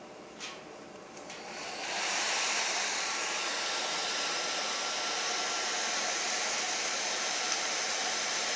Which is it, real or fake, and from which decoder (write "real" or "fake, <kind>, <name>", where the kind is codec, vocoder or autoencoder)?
fake, vocoder, BigVGAN v2